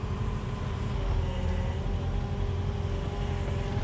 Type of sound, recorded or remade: recorded